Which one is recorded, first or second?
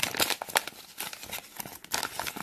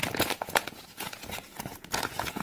first